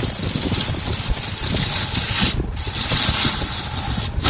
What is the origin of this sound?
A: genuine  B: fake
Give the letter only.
A